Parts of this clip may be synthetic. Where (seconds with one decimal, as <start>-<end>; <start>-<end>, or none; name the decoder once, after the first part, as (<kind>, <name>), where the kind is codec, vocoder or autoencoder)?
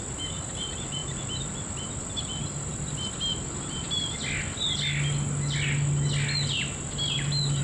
none